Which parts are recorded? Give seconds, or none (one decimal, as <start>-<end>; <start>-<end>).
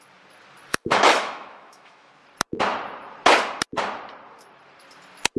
0.0-0.7; 2.1-5.4